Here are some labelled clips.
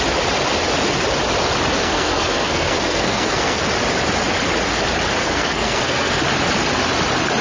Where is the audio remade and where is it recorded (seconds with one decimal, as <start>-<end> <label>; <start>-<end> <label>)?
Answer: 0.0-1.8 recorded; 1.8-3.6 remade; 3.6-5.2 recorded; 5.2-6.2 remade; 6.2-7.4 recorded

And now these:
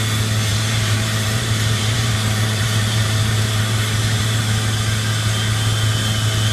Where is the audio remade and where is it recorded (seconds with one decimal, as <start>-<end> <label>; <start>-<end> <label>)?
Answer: 0.0-0.5 recorded; 0.5-4.4 remade; 4.4-6.5 recorded

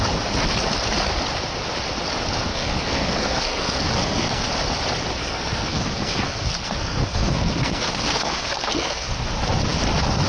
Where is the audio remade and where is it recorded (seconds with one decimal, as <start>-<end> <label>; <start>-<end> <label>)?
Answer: 0.0-2.5 recorded; 2.5-4.4 remade; 4.4-5.2 recorded; 5.2-9.1 remade; 9.1-10.3 recorded